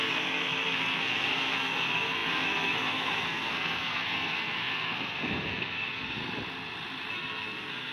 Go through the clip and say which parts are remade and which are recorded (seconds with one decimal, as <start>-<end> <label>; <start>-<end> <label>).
0.0-6.2 remade; 6.2-7.1 recorded; 7.1-7.9 remade